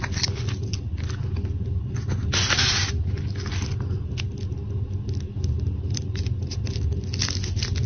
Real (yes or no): yes